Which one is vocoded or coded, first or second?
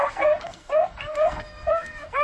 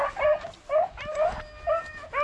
first